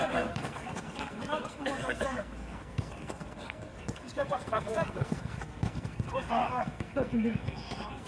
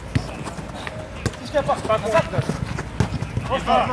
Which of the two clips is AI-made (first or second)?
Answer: first